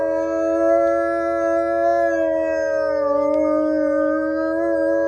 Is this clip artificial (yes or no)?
no